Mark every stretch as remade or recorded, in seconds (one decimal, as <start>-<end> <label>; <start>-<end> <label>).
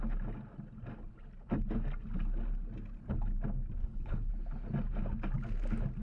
0.0-3.8 recorded; 3.8-4.3 remade; 4.3-6.0 recorded